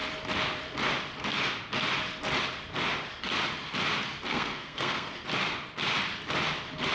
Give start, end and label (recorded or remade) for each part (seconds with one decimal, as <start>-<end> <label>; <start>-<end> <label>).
0.0-4.3 recorded; 4.3-5.1 remade; 5.1-6.9 recorded